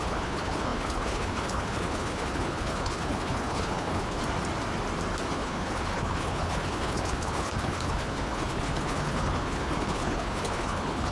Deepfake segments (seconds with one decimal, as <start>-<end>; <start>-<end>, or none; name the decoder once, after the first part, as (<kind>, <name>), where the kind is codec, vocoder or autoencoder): 0.0-4.2 (codec, HILCodec); 5.3-11.1